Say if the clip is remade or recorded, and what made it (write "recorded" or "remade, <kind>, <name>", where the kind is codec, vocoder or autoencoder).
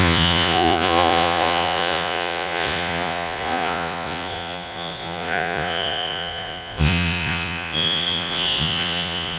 remade, vocoder, Vocos